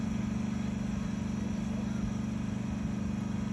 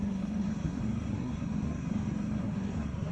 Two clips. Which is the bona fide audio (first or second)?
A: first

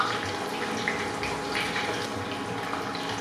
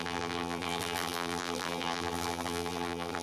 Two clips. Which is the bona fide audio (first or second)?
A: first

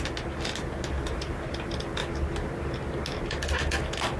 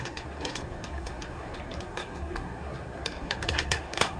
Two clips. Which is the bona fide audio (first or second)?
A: first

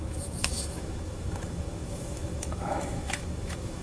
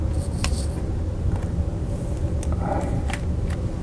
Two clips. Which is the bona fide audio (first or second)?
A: second